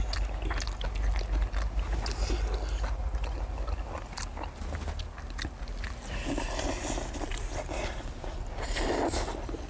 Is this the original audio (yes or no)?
yes